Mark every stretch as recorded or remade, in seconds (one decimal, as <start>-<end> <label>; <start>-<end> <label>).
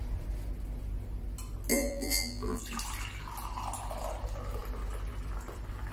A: 0.0-1.7 recorded; 1.7-2.6 remade; 2.6-5.9 recorded